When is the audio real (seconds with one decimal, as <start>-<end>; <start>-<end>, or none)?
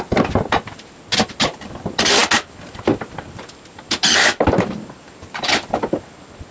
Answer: 0.0-6.5